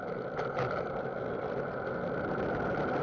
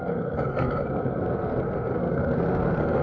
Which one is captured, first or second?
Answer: first